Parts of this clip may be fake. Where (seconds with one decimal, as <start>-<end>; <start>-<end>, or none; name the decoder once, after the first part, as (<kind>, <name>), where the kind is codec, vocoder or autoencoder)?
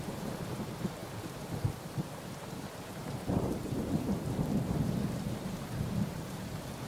0.0-6.9 (vocoder, BigVGAN v2)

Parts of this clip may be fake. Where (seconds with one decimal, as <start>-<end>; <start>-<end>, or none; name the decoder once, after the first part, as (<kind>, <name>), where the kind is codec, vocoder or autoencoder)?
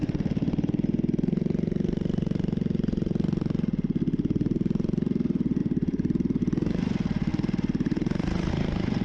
5.6-6.4 (vocoder, BigVGAN v2); 7.3-8.5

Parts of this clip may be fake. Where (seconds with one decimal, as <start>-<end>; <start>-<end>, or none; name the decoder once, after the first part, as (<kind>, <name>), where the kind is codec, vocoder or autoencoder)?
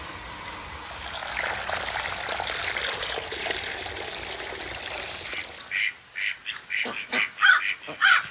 3.0-3.8 (vocoder, BigVGAN v2); 6.6-7.1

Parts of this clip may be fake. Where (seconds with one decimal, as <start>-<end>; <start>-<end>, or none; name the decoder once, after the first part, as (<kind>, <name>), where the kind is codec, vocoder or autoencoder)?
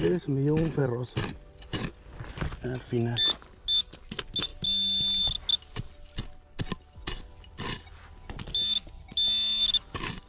0.8-1.3 (vocoder, BigVGAN v2)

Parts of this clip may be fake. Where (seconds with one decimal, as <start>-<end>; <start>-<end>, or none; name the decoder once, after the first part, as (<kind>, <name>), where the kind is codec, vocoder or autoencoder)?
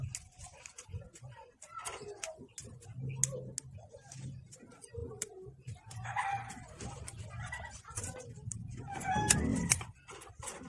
5.0-8.8 (vocoder, BigVGAN v2); 9.5-10.7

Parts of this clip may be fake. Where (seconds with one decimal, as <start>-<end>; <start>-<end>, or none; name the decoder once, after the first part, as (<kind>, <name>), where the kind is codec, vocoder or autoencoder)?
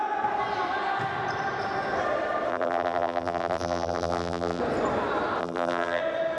2.5-4.6 (vocoder, BigVGAN v2); 5.4-6.0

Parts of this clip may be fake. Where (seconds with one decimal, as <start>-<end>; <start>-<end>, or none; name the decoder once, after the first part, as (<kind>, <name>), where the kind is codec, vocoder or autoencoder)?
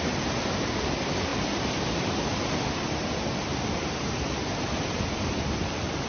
1.3-2.8 (vocoder, BigVGAN v2); 3.5-5.3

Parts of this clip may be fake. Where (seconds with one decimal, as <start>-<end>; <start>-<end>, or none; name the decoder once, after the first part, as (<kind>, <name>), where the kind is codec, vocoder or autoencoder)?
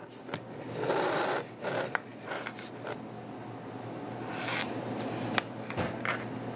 none